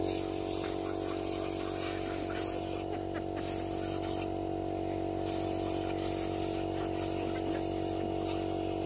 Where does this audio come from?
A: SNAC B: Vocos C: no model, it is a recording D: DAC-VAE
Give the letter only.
C